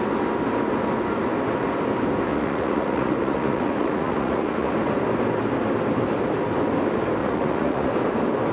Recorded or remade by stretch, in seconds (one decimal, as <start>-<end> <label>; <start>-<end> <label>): 0.0-2.3 recorded; 2.3-4.7 remade; 4.7-7.2 recorded; 7.2-7.9 remade; 7.9-8.5 recorded